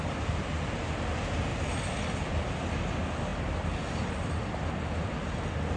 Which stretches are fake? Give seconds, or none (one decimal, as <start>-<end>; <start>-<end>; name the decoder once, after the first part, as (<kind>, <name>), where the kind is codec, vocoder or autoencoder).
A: none